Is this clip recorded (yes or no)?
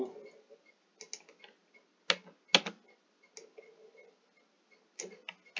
yes